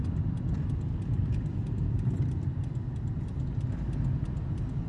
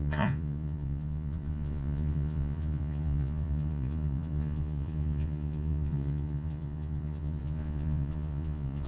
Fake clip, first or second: second